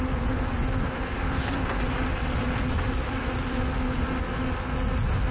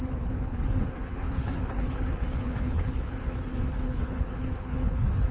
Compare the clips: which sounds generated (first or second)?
second